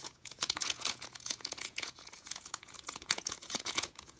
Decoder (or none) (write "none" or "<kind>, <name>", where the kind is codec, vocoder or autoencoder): vocoder, Vocos